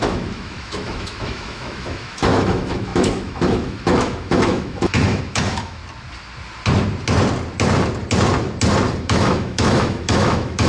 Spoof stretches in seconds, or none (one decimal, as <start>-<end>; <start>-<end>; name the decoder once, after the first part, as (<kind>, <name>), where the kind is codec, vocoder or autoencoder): 0.0-5.8 (autoencoder, DAC-VAE); 9.0-10.7